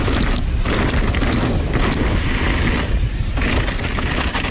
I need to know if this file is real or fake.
real